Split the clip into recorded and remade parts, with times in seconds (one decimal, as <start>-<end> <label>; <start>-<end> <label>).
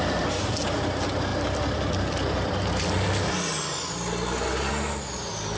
0.0-5.6 recorded